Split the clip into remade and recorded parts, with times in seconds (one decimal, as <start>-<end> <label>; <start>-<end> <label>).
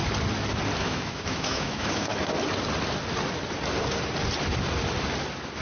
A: 0.0-0.8 recorded; 0.8-2.1 remade; 2.1-5.6 recorded